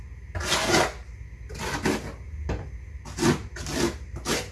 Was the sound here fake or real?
real